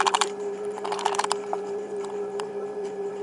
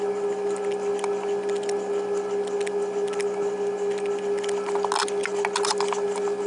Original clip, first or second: second